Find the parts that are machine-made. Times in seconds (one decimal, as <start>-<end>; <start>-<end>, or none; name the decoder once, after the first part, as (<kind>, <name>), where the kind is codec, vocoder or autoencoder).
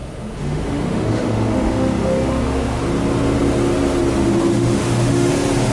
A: 0.0-2.8 (autoencoder, DAC-VAE); 4.5-5.3